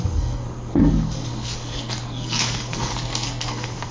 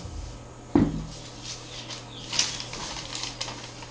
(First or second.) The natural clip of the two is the second